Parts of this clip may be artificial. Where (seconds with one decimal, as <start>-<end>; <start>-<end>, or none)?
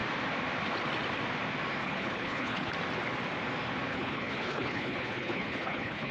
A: 1.8-2.7; 3.9-6.1